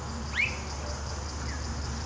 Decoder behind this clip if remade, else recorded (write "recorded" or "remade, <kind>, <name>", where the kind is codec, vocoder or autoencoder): recorded